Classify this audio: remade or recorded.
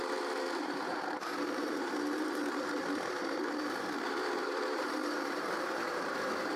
remade